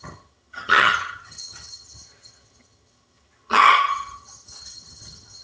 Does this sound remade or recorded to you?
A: remade